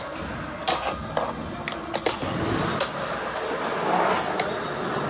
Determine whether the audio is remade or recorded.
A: recorded